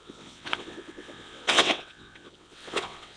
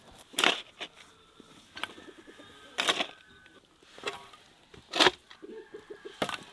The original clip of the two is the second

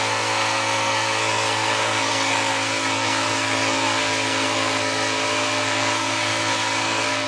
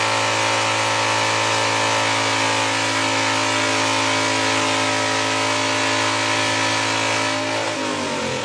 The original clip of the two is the second